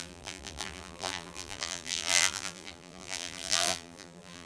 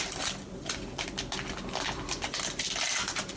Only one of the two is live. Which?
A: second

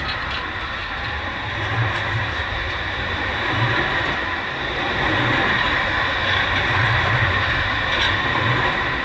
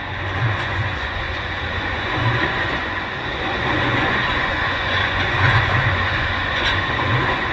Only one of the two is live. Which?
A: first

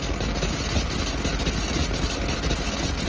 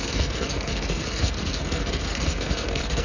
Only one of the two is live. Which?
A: first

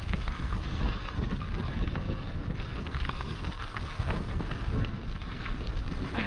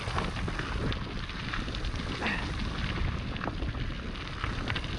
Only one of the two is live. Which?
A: second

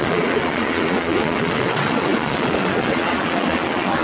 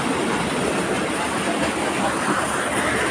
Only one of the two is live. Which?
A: second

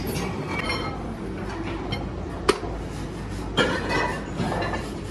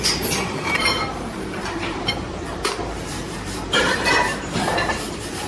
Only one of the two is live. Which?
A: first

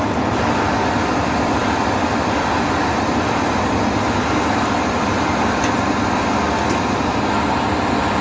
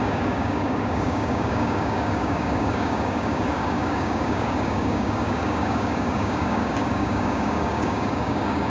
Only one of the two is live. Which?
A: first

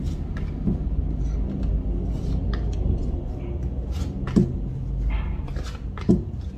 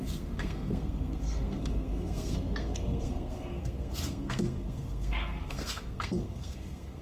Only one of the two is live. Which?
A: first